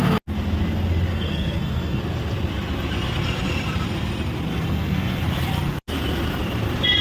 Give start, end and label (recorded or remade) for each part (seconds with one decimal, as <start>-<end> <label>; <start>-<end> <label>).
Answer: 0.0-1.1 recorded; 1.1-2.0 remade; 2.0-4.5 recorded; 4.5-5.2 remade; 5.2-7.0 recorded